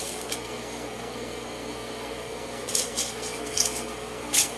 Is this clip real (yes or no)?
no